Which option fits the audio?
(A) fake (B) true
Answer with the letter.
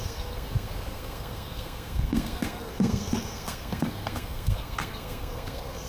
A